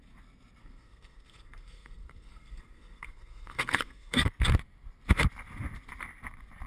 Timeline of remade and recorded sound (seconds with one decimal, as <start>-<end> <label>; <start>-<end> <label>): 0.0-0.6 recorded; 0.6-4.3 remade; 4.3-6.7 recorded